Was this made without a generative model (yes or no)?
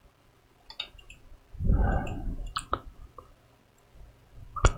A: yes